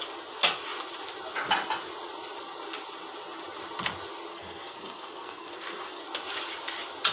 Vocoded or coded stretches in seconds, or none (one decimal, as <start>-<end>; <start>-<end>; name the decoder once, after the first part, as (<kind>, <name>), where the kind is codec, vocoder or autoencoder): 4.3-6.0 (codec, SNAC)